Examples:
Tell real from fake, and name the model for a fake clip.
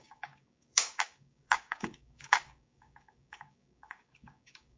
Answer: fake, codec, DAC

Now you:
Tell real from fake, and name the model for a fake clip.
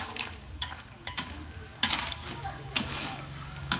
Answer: fake, codec, DAC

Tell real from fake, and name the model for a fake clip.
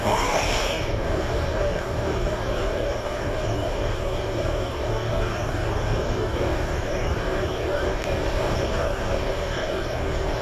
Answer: fake, codec, DAC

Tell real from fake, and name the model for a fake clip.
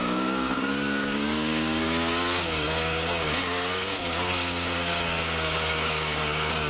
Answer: fake, codec, DAC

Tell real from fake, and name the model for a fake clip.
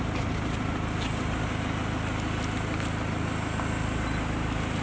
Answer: real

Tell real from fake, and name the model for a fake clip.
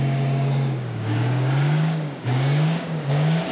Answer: fake, codec, DAC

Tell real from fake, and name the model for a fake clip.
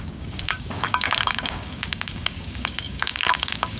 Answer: fake, codec, DAC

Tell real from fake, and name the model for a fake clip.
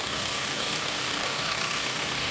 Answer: fake, codec, DAC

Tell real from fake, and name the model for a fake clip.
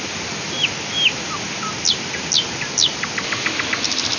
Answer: real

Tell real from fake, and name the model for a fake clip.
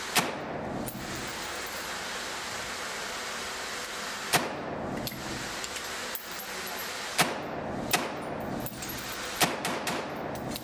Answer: real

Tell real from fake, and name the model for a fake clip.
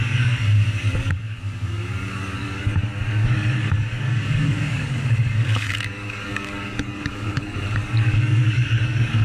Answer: fake, codec, DAC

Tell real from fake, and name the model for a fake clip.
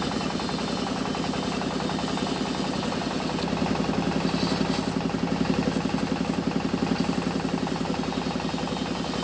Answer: real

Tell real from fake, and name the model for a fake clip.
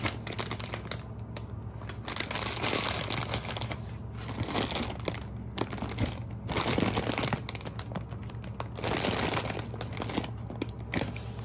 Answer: real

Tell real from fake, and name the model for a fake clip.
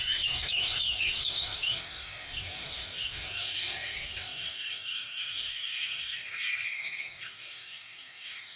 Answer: fake, codec, DAC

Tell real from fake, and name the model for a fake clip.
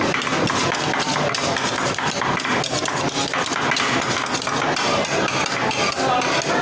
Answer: real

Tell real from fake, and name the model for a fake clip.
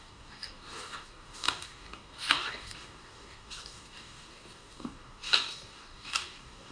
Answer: fake, codec, DAC